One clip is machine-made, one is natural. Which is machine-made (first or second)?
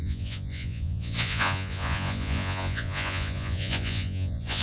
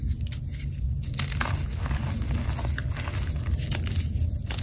first